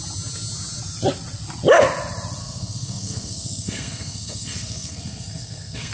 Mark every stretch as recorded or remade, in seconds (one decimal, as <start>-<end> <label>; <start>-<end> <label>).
0.0-2.4 recorded; 2.4-5.9 remade